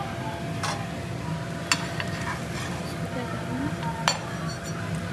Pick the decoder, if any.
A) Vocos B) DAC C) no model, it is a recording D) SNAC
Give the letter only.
C